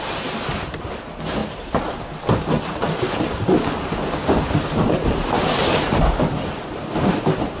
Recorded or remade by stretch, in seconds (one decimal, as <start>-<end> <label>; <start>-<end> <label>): 0.0-1.4 recorded; 1.4-6.0 remade; 6.0-7.6 recorded